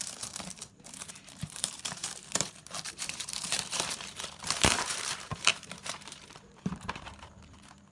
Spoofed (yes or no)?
yes